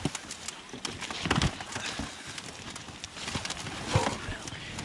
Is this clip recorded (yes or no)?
yes